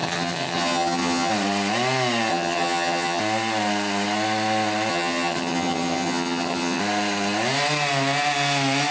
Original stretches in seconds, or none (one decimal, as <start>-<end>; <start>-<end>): 1.3-2.3; 3.2-4.9; 6.8-8.9